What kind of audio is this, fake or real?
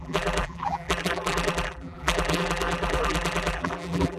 fake